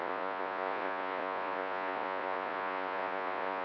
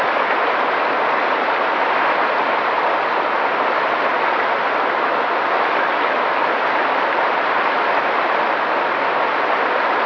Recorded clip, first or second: second